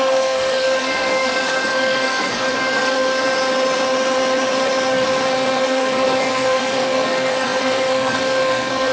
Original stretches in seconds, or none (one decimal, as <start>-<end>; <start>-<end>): 3.3-5.5